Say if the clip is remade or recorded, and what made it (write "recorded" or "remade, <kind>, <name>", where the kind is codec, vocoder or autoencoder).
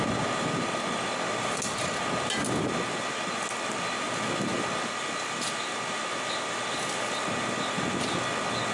recorded